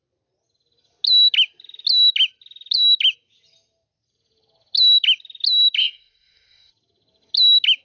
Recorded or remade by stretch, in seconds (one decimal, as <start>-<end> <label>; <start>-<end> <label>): 0.0-5.8 recorded; 5.8-6.7 remade; 6.7-7.8 recorded

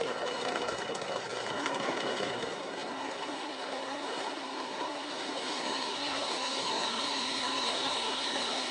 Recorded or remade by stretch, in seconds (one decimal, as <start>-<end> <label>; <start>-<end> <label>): 0.0-8.7 remade

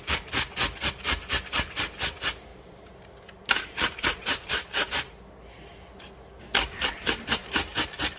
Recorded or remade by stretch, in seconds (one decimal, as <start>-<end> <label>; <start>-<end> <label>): 0.0-2.5 recorded; 2.5-4.9 remade; 4.9-7.4 recorded; 7.4-8.2 remade